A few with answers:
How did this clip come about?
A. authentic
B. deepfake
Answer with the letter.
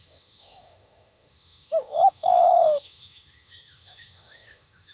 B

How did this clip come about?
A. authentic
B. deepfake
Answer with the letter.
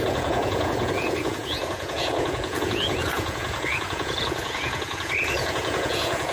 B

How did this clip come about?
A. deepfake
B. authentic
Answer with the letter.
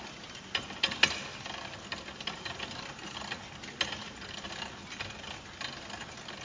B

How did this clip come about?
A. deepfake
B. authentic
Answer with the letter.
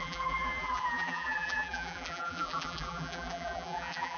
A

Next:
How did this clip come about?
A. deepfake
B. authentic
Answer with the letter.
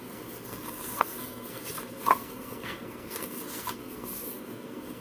A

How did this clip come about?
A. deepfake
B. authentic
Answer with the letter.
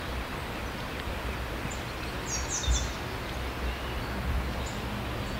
B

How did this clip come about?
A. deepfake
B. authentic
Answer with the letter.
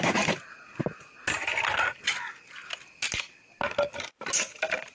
B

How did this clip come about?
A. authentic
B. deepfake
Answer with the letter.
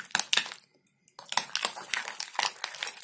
A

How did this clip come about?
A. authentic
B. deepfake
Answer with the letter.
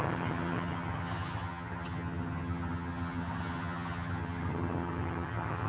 B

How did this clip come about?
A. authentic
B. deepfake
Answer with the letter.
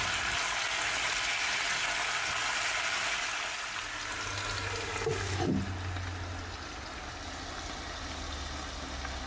A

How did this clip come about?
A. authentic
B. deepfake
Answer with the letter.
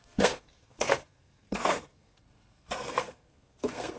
B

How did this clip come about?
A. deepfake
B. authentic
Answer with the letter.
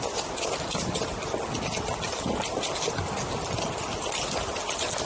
B